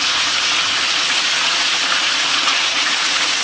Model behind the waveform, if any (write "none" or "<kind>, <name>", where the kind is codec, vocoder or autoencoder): vocoder, Vocos